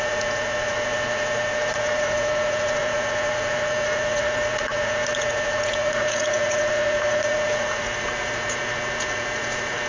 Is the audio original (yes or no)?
no